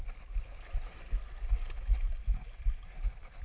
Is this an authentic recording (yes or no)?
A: yes